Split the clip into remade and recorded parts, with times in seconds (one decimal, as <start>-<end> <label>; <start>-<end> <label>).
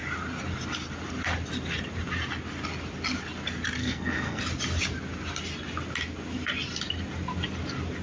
0.0-3.8 recorded; 3.8-4.4 remade; 4.4-8.0 recorded